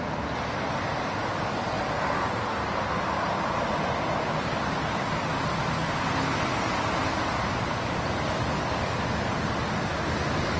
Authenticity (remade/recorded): recorded